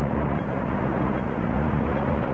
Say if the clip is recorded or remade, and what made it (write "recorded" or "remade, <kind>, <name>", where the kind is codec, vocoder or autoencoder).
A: remade, vocoder, Vocos